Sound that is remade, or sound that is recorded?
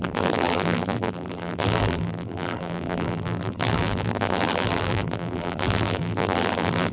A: remade